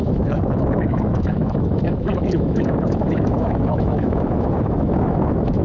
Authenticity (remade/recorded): remade